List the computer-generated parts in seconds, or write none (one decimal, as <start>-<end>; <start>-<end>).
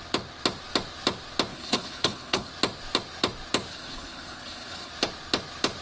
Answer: 1.5-2.5; 3.7-4.9